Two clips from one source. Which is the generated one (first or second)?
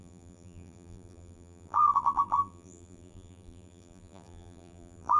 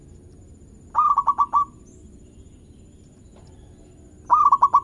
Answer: first